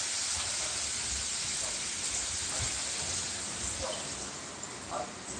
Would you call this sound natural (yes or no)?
yes